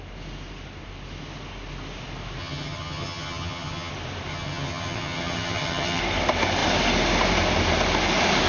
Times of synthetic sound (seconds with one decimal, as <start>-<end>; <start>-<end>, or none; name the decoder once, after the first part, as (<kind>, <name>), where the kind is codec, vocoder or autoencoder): 2.4-3.9 (vocoder, HiFi-GAN); 4.3-6.0